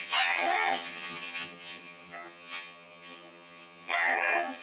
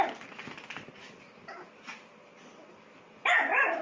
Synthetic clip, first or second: first